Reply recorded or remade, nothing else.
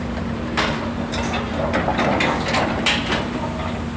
recorded